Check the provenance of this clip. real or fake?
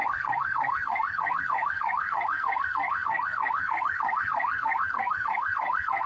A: fake